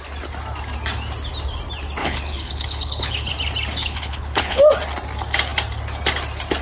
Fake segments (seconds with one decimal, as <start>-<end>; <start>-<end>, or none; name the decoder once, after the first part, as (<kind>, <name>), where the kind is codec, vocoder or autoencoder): 2.0-3.3 (codec, HILCodec); 3.8-4.7